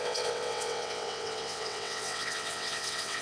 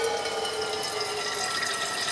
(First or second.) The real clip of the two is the second